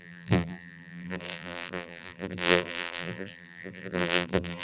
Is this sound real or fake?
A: fake